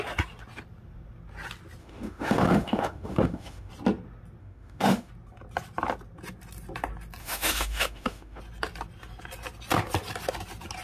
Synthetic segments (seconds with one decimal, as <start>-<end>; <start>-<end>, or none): 1.8-3.7; 4.4-5.1; 7.2-8.4